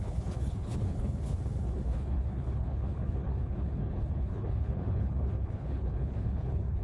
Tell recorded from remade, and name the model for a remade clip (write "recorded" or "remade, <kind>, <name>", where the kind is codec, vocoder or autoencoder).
remade, codec, HILCodec